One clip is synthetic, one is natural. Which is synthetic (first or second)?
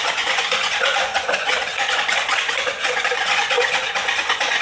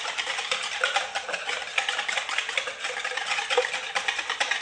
first